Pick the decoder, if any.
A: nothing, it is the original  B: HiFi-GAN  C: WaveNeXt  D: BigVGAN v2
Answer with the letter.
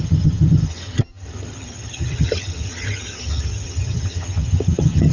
B